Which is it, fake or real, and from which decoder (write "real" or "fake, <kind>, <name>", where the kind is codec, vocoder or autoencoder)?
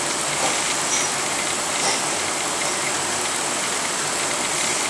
real